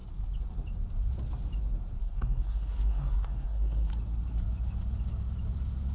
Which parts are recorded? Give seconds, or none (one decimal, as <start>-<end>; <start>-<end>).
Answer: 0.0-2.0; 3.9-5.9